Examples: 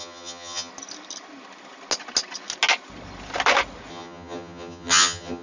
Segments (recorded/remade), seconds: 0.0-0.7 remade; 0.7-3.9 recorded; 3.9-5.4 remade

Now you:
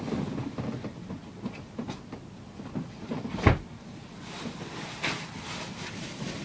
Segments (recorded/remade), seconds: 0.0-6.4 recorded